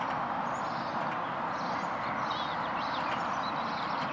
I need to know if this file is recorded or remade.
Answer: recorded